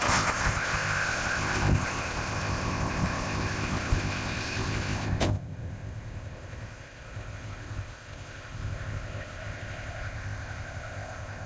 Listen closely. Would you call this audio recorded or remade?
remade